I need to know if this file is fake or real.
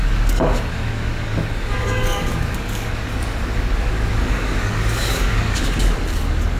fake